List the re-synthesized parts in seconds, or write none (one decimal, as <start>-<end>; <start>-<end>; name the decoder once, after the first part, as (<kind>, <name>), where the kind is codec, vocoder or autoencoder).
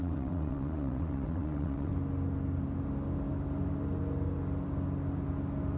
0.0-1.9 (vocoder, WaveNeXt)